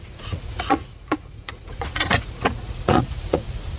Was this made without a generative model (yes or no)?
no